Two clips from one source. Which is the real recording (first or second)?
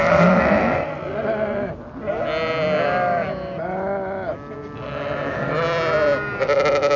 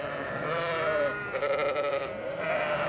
first